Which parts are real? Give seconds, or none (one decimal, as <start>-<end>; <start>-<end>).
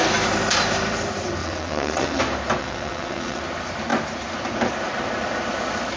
0.0-1.4; 2.2-2.6; 3.4-6.0